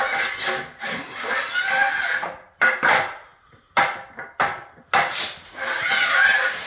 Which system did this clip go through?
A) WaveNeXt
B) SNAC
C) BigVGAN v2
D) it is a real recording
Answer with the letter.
D